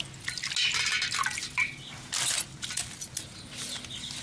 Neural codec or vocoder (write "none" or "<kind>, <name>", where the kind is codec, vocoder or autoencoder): none